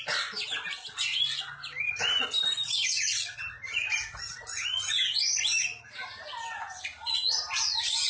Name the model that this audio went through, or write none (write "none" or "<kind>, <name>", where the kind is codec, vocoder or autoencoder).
none